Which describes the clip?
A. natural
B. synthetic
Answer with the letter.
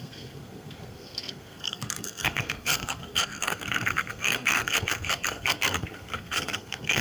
B